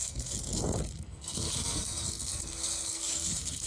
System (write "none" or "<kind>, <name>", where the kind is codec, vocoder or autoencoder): codec, SNAC